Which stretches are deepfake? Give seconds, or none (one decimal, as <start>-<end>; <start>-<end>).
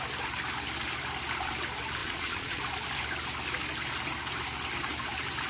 2.0-2.6